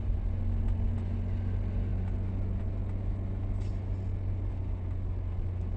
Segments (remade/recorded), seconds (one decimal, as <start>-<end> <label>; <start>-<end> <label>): 0.0-5.8 recorded